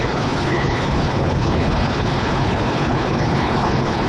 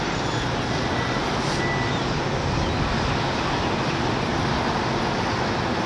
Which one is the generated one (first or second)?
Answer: first